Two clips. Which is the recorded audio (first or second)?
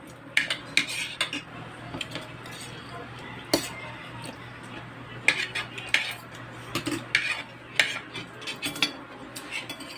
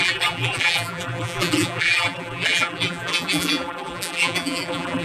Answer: first